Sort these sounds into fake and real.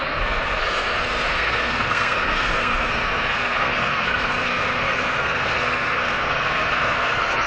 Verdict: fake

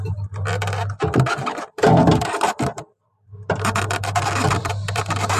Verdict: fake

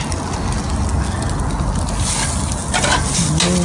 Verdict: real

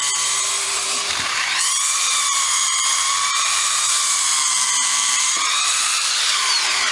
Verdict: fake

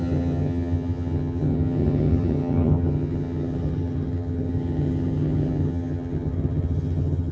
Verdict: fake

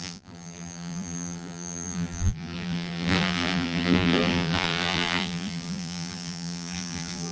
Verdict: fake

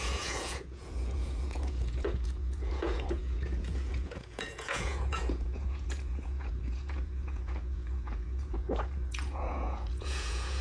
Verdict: fake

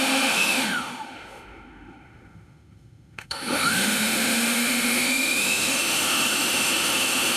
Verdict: fake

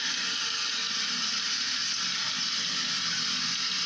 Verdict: real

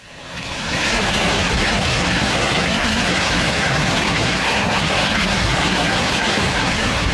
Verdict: fake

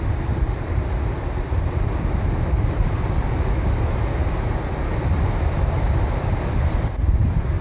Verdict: real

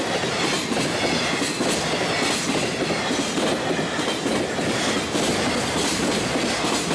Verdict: real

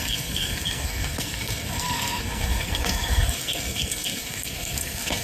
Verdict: fake